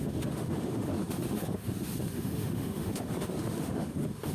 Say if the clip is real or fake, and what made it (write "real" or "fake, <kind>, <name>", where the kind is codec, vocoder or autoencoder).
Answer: fake, autoencoder, DAC-VAE